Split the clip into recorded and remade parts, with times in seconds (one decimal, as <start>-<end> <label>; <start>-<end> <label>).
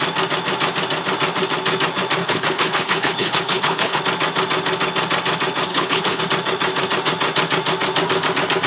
0.0-2.2 recorded; 2.2-4.0 remade; 4.0-5.7 recorded; 5.7-6.2 remade; 6.2-8.7 recorded